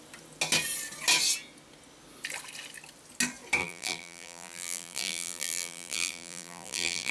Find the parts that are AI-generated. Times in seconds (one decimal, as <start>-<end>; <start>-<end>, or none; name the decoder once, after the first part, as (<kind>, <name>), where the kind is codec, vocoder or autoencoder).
3.6-7.1 (vocoder, BigVGAN v2)